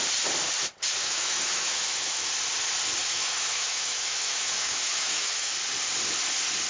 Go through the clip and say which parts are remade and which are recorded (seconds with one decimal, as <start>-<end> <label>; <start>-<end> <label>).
0.0-1.0 recorded; 1.0-2.3 remade; 2.3-3.0 recorded; 3.0-5.5 remade; 5.5-6.7 recorded